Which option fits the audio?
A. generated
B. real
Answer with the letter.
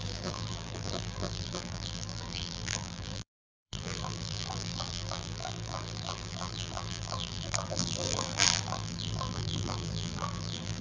A